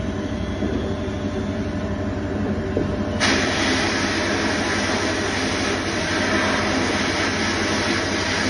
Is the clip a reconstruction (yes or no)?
no